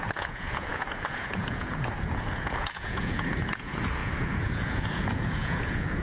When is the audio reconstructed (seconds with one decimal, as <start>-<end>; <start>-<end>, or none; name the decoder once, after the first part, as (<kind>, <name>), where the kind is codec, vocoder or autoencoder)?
0.0-6.0 (vocoder, Vocos)